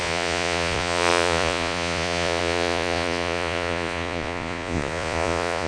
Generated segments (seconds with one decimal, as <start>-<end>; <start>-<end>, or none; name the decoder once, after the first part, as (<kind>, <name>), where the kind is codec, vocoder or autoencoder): 0.0-5.7 (vocoder, Vocos)